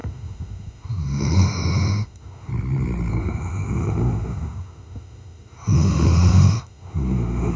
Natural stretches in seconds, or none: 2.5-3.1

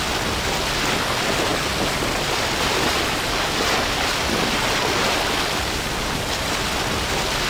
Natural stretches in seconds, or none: 0.0-7.5

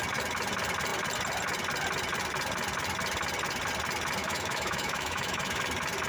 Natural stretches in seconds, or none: 0.0-4.2; 5.6-6.1

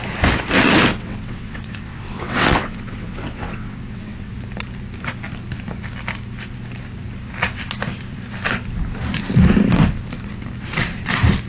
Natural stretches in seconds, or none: 0.0-0.9; 4.3-11.5